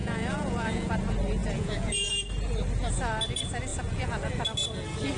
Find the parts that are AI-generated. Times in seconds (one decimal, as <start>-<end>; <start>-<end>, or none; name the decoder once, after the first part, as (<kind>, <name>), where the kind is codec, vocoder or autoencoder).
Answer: 0.0-0.9 (vocoder, Vocos); 1.4-2.1; 3.7-4.3